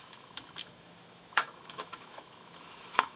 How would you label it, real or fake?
fake